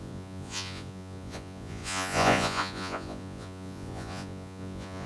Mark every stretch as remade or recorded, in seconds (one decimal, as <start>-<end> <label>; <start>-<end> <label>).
0.0-5.1 remade